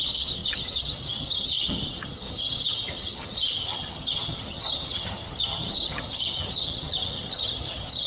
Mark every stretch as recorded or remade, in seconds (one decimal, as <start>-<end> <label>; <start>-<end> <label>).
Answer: 0.0-8.1 remade